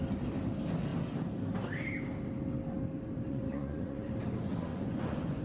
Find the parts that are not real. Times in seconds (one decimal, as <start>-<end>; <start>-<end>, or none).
3.3-4.1; 4.7-5.4